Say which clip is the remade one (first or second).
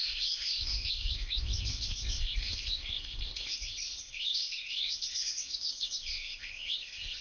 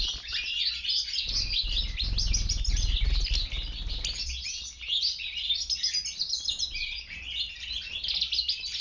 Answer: first